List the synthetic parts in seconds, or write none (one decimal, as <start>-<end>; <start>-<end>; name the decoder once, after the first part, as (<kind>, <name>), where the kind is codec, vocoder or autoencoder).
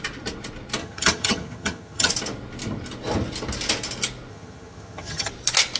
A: 0.8-2.1 (vocoder, HiFi-GAN); 4.3-5.3